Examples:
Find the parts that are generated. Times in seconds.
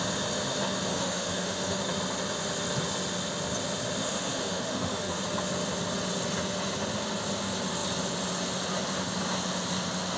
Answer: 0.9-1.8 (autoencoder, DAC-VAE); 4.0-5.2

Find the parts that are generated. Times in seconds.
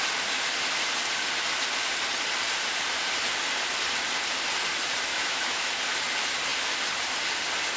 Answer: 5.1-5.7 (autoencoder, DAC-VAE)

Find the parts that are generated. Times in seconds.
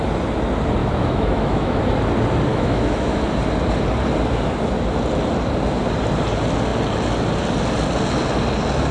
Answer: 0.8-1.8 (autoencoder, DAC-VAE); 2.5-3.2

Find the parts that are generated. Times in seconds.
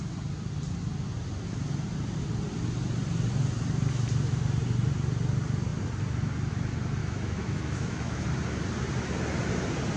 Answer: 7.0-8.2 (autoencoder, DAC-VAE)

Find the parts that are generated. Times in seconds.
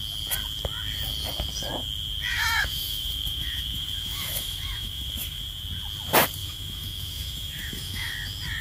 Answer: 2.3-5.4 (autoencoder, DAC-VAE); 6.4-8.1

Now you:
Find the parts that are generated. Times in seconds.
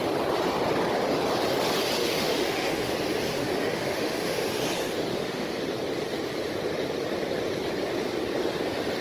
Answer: 2.0-2.9 (autoencoder, DAC-VAE); 3.3-4.4; 5.1-5.6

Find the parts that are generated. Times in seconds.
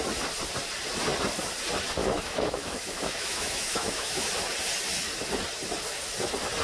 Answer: 2.0-4.3 (autoencoder, DAC-VAE)